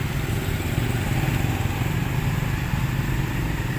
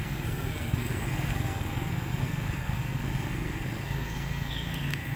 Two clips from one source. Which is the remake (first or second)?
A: second